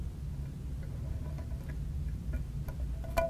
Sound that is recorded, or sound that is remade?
recorded